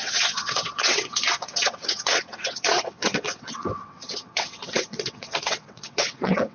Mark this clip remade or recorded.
remade